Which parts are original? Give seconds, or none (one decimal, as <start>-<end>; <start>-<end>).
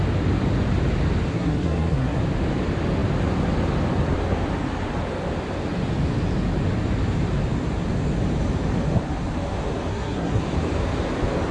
0.0-1.3; 2.2-9.9; 10.4-11.5